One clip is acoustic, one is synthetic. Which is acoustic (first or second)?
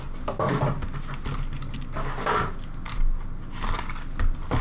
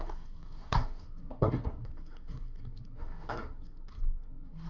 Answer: first